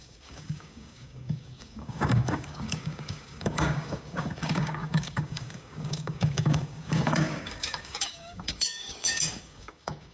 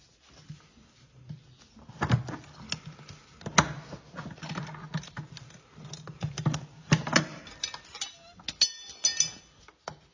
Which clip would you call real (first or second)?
second